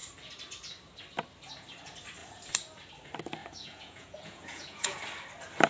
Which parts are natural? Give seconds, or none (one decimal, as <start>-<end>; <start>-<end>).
0.0-3.4; 5.0-5.7